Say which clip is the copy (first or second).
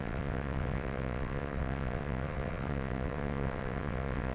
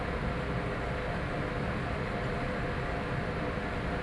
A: first